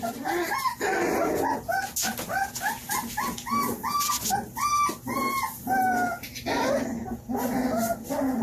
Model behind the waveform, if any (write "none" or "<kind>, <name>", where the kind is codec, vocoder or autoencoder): none